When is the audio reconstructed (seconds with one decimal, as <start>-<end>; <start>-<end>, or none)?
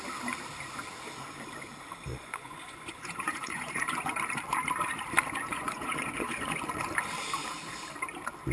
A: 2.1-4.0; 5.5-6.6